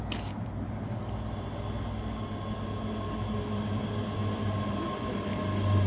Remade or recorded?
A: recorded